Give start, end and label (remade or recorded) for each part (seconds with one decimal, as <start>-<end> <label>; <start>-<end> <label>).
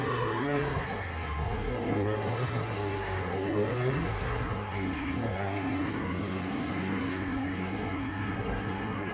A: 0.0-9.1 remade